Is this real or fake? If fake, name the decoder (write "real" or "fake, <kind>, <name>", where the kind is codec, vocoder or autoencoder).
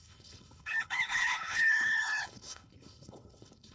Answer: fake, codec, HILCodec